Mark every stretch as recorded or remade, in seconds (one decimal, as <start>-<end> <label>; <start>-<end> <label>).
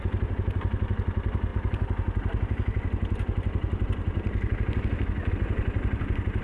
0.0-6.4 recorded